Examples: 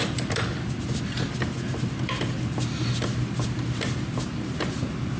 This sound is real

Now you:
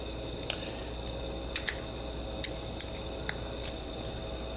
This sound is real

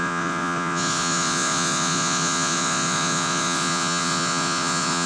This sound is fake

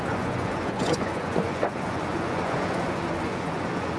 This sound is fake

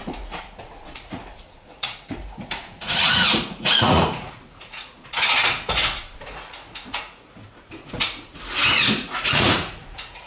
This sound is fake